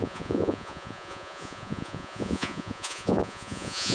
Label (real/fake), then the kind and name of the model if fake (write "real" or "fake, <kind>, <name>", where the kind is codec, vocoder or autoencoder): fake, vocoder, Vocos